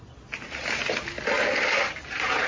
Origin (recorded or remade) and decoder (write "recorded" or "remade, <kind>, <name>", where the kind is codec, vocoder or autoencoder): recorded